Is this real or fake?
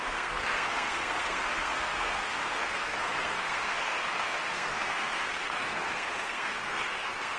fake